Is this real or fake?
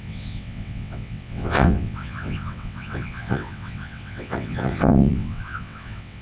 fake